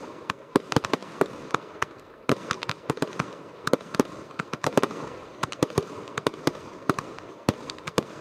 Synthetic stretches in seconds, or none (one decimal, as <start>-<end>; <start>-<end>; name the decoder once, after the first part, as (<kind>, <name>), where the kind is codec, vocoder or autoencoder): 0.0-8.2 (codec, SNAC)